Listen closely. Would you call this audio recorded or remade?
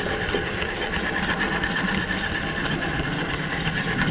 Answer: recorded